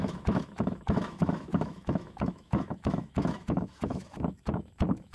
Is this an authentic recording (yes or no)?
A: no